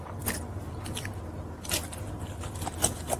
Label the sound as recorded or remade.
recorded